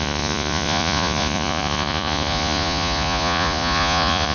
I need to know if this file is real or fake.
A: fake